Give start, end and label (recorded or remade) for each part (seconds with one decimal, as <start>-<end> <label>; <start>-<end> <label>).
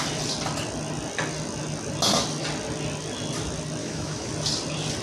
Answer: 0.0-3.8 recorded; 3.8-4.3 remade; 4.3-5.0 recorded